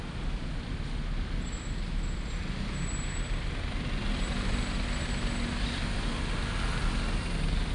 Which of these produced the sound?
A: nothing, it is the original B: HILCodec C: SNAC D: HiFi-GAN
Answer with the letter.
A